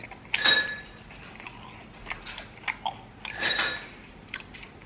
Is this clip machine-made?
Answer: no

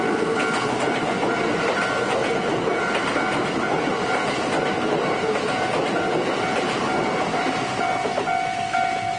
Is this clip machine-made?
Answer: no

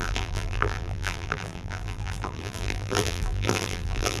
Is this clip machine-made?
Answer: yes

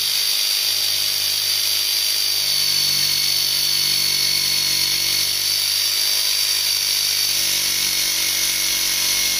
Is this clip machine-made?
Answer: no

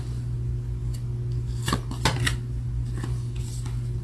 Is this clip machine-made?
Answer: no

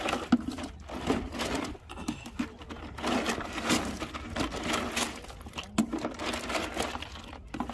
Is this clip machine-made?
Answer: no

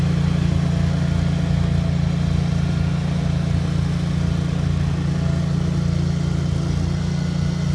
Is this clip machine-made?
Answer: no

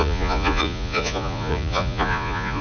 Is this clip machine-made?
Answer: yes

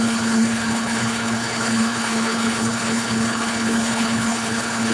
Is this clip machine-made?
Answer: yes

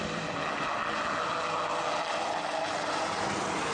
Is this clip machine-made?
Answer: no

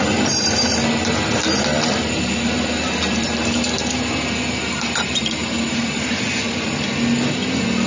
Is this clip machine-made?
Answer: no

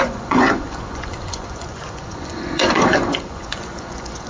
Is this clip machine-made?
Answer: yes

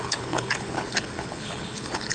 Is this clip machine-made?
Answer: yes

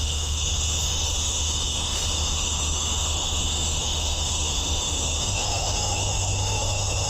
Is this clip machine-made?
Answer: yes